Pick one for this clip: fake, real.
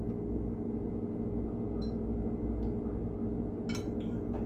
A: real